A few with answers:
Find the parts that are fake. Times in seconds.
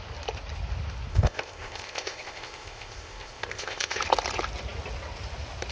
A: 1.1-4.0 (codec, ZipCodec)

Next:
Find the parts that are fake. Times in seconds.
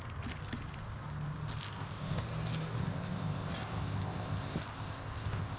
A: 1.6-2.2 (codec, ZipCodec); 2.8-5.6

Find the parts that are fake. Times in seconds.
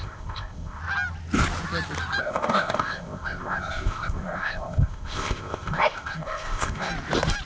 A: 0.0-0.8 (codec, ZipCodec); 2.2-6.9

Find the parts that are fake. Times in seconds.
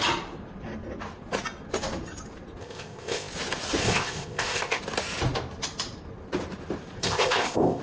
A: 2.6-3.3 (codec, ZipCodec); 3.8-4.8; 7.0-7.8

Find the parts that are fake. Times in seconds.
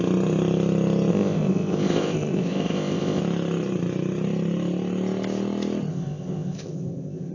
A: 1.1-3.2 (codec, ZipCodec); 5.9-7.3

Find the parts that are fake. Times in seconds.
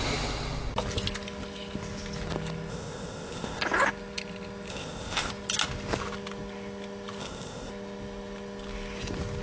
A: 2.7-3.6 (codec, ZipCodec); 4.7-5.3; 7.2-7.7